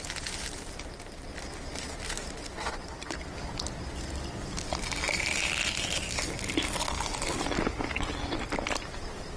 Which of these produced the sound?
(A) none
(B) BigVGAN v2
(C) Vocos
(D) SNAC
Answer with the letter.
A